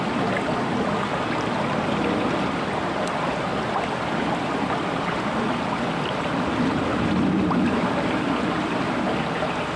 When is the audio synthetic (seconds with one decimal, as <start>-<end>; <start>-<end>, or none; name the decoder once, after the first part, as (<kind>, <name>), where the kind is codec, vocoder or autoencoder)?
none

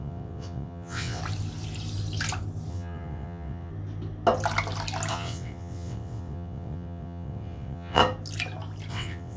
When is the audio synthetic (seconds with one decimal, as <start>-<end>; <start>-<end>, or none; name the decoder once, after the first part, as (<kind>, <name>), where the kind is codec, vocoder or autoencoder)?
0.0-1.2 (vocoder, WaveNeXt); 2.7-3.7; 5.1-8.0; 8.9-9.4

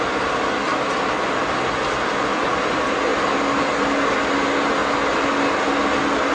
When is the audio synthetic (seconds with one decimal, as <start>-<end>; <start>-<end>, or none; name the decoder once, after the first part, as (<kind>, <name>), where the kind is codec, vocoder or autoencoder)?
none

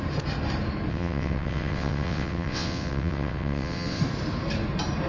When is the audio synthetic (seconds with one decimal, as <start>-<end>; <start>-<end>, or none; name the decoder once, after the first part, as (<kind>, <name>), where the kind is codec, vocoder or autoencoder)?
0.9-4.0 (vocoder, WaveNeXt)

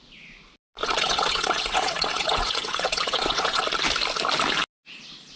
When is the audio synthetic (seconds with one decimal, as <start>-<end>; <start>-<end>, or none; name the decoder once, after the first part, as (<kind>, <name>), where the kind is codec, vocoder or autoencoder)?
0.8-3.6 (vocoder, WaveNeXt)